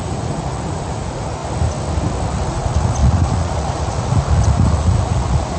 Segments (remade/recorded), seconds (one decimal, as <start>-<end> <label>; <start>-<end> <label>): 0.0-1.4 remade; 1.4-2.5 recorded; 2.5-5.6 remade